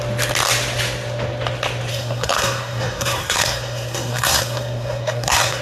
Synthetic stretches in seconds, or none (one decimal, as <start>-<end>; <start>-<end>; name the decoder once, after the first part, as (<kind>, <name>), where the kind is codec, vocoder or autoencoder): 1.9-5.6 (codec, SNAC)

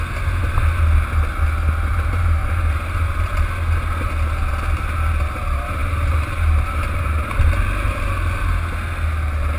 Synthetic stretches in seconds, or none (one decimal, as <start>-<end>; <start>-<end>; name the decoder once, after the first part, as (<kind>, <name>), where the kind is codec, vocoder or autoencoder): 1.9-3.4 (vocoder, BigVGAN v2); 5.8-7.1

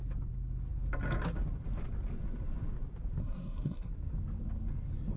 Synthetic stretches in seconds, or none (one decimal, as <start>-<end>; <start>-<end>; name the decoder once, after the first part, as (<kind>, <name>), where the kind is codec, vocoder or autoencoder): 3.2-3.9 (codec, SNAC)

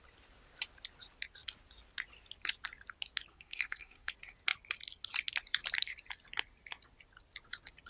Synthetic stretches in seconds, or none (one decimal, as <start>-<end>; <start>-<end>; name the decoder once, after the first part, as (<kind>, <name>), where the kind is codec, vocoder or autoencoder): 3.3-4.1 (codec, SNAC)

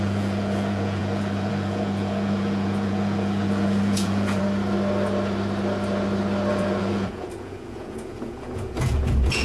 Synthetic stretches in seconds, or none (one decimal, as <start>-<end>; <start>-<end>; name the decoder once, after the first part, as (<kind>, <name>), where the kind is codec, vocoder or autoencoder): 0.0-4.4 (vocoder, Vocos); 6.5-9.4

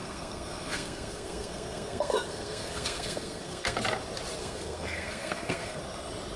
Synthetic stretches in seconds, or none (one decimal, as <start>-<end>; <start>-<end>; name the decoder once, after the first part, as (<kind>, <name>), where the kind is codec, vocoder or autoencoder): 0.0-3.8 (codec, SNAC); 4.4-5.8

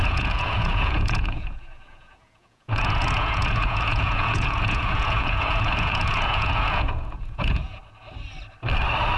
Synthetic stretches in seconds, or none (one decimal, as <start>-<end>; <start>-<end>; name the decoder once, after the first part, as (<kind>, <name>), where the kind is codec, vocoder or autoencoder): 0.0-7.8 (vocoder, Vocos)